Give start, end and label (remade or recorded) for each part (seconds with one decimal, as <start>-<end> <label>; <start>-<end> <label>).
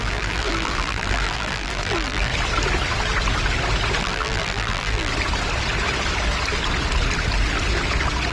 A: 0.0-2.3 remade; 2.3-4.0 recorded; 4.0-5.1 remade; 5.1-8.3 recorded